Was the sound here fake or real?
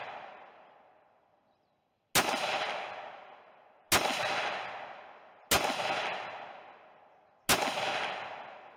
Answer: real